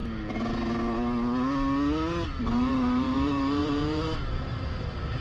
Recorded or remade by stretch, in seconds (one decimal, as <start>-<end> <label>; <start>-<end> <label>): 0.0-2.4 recorded; 2.4-5.2 remade